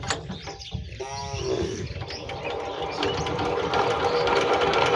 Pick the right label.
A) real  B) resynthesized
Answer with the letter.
A